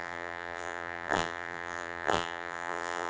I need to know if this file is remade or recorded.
remade